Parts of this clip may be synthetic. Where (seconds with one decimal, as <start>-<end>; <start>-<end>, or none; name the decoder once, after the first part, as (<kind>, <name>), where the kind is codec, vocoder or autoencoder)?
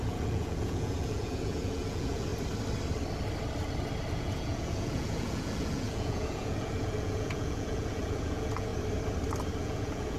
0.0-2.3 (vocoder, Vocos); 4.1-8.7; 9.6-10.2